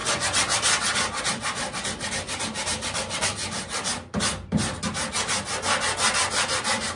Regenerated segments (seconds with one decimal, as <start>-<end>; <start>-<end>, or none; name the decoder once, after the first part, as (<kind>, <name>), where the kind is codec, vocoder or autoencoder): 1.2-3.9 (vocoder, BigVGAN v2); 6.6-7.0